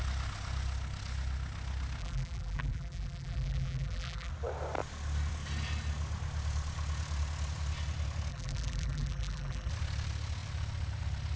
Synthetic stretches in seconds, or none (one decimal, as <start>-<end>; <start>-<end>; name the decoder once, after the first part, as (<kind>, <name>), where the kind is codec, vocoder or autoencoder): 2.0-4.3 (vocoder, BigVGAN v2); 8.3-9.7